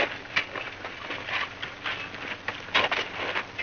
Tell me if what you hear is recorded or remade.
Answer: recorded